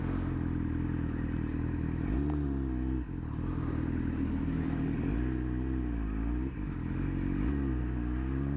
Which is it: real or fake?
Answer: real